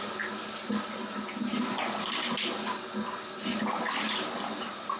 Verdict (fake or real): real